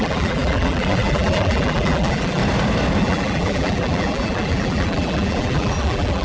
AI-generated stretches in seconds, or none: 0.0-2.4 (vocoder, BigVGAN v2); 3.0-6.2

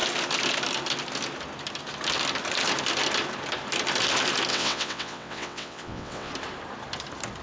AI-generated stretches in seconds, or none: 4.5-6.3 (vocoder, WaveNeXt)

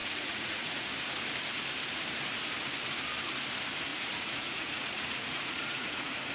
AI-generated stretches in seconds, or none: 0.0-0.9 (vocoder, Vocos); 3.9-6.3